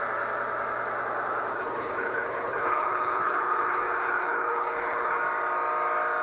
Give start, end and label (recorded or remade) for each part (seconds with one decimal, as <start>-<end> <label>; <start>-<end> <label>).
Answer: 0.0-1.5 recorded; 1.5-5.2 remade; 5.2-6.2 recorded